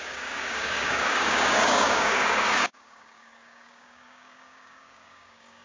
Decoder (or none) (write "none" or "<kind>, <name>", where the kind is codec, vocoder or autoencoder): codec, DAC